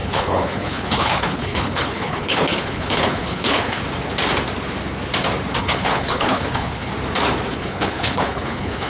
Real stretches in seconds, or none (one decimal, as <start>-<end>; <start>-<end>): 3.8-5.6; 6.9-7.5